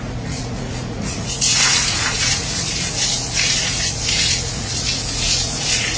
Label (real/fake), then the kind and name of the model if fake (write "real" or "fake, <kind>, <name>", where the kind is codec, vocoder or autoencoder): fake, vocoder, Vocos